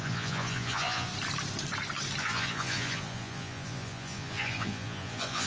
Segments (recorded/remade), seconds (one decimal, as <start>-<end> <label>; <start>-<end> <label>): 0.0-1.1 remade; 1.1-2.2 recorded; 2.2-5.5 remade